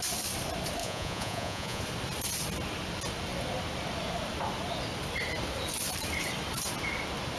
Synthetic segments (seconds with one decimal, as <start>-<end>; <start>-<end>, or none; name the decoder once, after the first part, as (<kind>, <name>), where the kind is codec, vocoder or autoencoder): 0.8-1.8 (vocoder, Vocos)